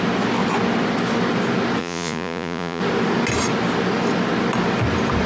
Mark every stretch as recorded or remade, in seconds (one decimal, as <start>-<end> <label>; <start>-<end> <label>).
0.0-1.8 recorded; 1.8-2.8 remade; 2.8-5.3 recorded